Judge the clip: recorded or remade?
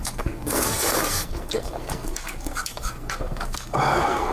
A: remade